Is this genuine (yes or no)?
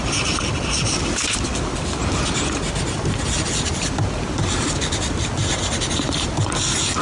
yes